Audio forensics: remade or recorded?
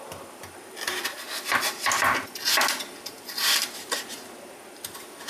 recorded